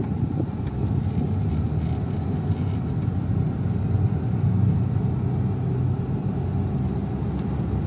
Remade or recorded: recorded